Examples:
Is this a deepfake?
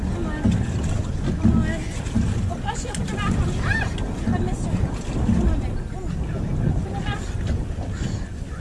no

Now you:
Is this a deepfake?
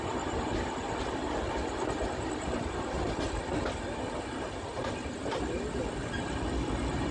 no